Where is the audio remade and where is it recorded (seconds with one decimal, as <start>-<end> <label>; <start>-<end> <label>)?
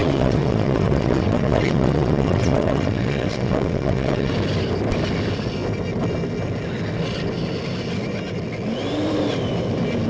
0.0-4.3 remade; 4.3-10.1 recorded